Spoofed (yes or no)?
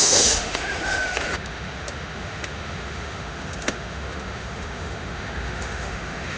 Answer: yes